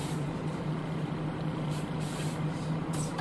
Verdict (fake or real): fake